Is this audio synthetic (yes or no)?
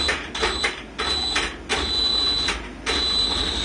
no